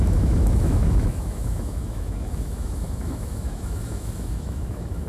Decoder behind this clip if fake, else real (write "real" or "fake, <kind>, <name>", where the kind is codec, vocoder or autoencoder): fake, autoencoder, DAC-VAE